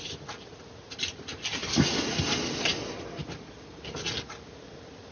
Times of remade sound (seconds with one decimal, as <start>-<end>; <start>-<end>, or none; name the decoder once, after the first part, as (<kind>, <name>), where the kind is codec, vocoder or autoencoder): none